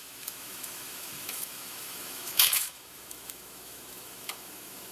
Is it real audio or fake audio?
fake